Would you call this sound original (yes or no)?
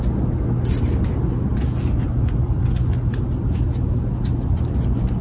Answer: yes